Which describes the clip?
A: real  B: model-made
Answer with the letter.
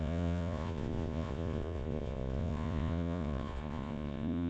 B